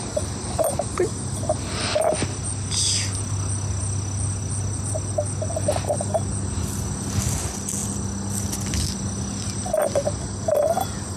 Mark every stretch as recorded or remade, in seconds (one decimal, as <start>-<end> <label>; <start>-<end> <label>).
0.0-11.2 recorded